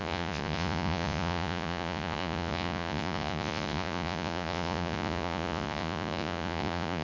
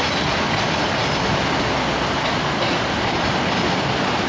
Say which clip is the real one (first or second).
second